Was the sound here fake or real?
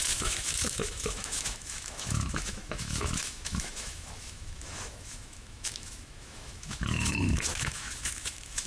fake